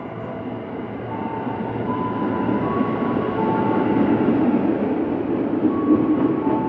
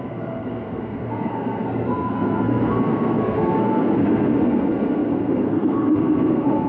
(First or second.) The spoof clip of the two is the second